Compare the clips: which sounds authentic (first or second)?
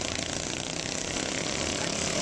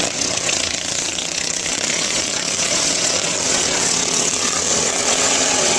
first